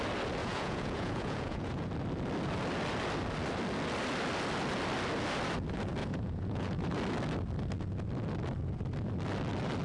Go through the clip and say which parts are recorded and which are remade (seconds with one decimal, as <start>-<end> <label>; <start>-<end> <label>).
0.0-0.4 recorded; 0.4-1.9 remade; 1.9-6.0 recorded; 6.0-6.9 remade; 6.9-9.8 recorded